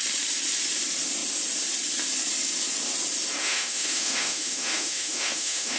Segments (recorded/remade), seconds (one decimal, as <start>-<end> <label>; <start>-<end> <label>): 0.0-3.4 recorded; 3.4-5.8 remade